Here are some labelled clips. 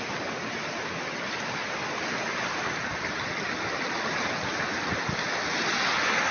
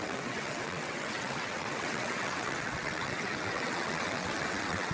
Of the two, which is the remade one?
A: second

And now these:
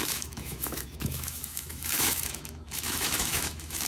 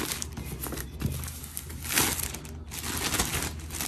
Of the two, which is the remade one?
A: first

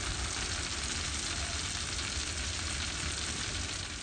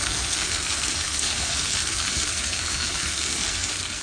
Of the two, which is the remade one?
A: second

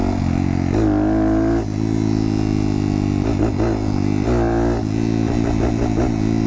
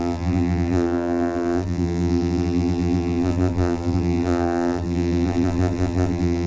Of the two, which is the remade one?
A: second